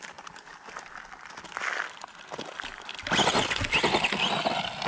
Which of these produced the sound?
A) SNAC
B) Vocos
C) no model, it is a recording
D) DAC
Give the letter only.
C